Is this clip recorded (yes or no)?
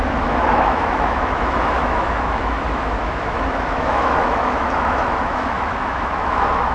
no